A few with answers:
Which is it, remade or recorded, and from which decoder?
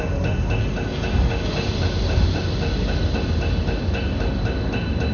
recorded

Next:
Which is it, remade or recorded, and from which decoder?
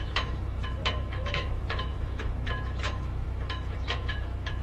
remade, autoencoder, DAC-VAE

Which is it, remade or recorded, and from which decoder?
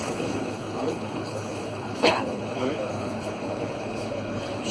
remade, codec, HILCodec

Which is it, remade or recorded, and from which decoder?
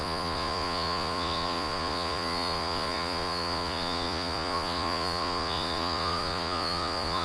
remade, vocoder, Vocos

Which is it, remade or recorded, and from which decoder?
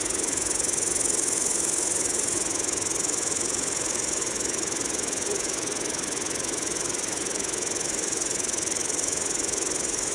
remade, autoencoder, DAC-VAE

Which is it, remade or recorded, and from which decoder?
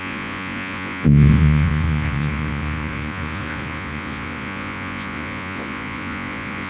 remade, vocoder, Vocos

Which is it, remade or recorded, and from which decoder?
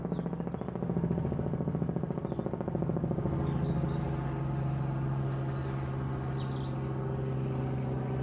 recorded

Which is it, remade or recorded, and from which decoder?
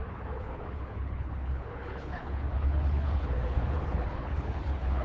remade, codec, HILCodec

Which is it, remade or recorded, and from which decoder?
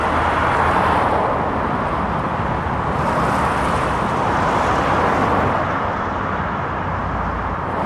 recorded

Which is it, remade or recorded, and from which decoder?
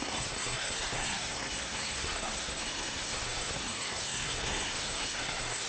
remade, codec, SNAC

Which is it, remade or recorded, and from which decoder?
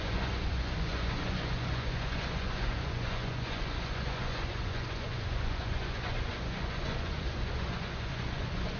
remade, vocoder, Vocos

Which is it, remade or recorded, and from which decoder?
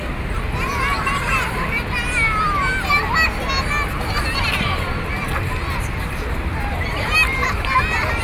recorded